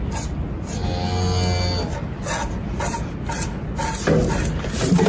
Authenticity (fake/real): real